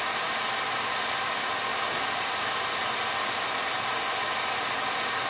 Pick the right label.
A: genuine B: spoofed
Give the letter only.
A